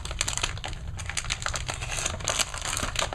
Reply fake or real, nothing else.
real